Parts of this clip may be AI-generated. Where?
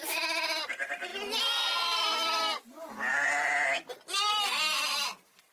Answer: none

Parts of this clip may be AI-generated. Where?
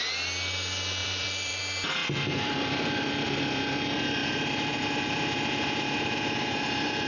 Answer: 1.0-1.6; 2.0-3.4; 4.2-7.1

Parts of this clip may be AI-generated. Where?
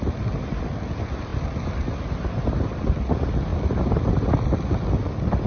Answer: none